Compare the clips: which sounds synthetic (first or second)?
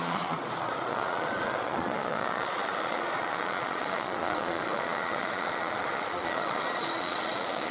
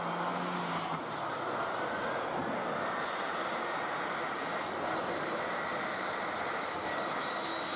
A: first